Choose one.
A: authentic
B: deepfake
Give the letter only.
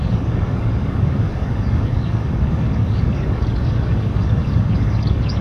B